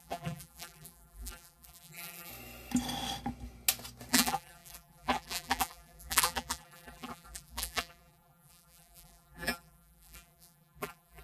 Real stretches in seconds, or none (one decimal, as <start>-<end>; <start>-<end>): 2.3-4.1

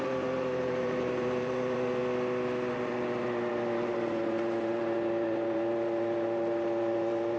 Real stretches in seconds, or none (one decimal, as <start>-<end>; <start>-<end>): 2.0-2.7

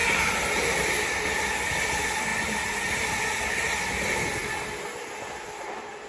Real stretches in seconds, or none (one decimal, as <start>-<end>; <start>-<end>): 0.0-6.1

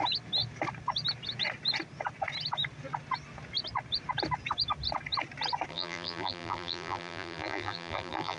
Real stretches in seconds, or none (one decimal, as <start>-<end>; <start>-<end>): 0.0-5.7